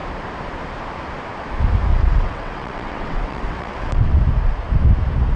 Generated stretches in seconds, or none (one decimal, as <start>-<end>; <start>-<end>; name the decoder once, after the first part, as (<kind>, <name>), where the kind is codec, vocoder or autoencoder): 1.9-4.2 (vocoder, WaveNeXt)